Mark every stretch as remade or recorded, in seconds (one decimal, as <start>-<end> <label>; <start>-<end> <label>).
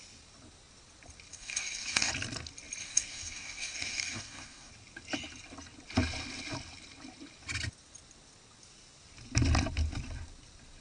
0.0-1.3 recorded; 1.3-2.1 remade; 2.1-2.8 recorded; 2.8-4.7 remade; 4.7-10.8 recorded